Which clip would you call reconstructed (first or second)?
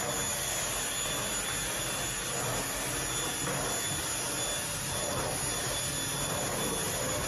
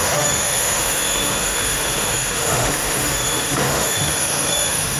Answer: second